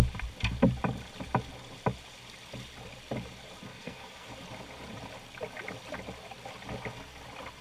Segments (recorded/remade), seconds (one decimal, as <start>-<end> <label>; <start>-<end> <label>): 0.0-3.7 recorded; 3.7-4.3 remade; 4.3-7.6 recorded